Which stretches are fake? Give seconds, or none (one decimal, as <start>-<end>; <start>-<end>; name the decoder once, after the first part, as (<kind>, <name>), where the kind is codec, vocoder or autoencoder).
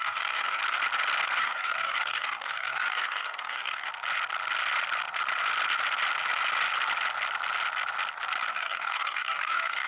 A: 0.0-0.6 (codec, DAC); 1.4-3.9; 8.5-9.9